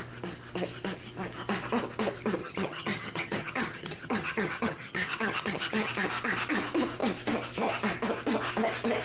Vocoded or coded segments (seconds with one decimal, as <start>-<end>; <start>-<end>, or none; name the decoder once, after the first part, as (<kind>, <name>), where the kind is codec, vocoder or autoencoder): 2.4-5.9 (vocoder, HiFi-GAN)